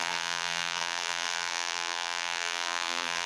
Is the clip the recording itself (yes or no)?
no